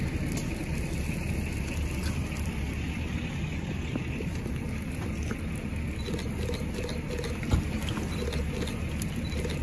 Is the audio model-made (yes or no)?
no